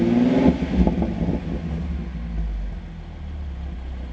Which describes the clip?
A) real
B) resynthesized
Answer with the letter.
A